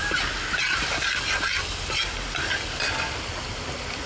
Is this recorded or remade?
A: recorded